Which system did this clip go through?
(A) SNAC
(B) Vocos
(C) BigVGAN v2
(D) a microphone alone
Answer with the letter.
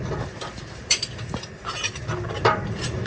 C